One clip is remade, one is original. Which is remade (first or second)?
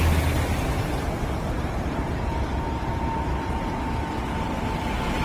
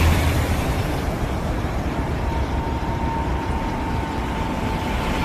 second